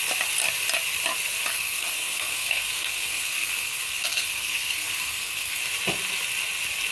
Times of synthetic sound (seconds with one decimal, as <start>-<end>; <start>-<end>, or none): 1.5-5.6